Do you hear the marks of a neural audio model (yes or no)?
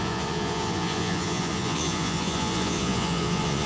yes